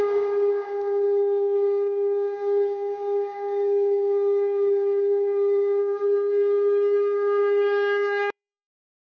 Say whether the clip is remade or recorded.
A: remade